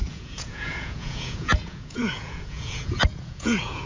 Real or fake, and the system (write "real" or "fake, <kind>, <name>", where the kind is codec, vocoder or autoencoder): fake, vocoder, Vocos